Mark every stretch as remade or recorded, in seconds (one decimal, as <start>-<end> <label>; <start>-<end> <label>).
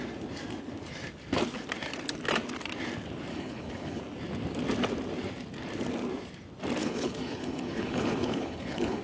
0.0-3.3 recorded; 3.3-4.0 remade; 4.0-6.8 recorded; 6.8-9.0 remade